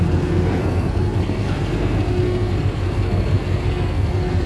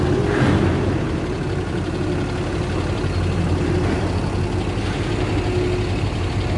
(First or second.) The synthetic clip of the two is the first